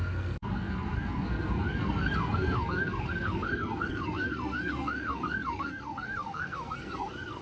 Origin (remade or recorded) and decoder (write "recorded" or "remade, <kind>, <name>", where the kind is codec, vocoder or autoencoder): remade, codec, SNAC